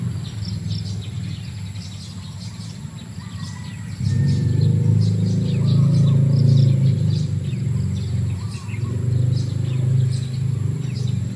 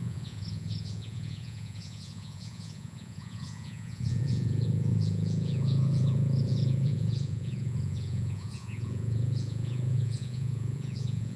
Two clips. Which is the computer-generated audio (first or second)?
second